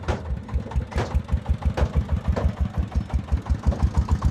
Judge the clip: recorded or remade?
recorded